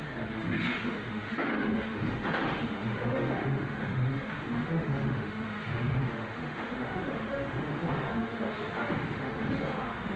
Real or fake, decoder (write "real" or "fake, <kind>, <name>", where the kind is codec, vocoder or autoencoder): fake, autoencoder, DAC-VAE